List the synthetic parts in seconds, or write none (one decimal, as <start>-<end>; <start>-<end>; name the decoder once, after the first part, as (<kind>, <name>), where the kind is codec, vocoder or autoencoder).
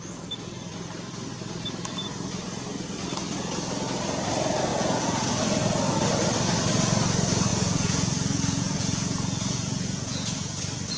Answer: 4.7-5.4 (vocoder, Vocos); 7.5-10.6